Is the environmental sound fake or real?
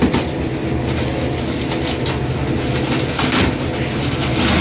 real